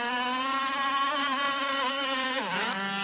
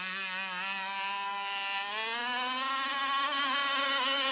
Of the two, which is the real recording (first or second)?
second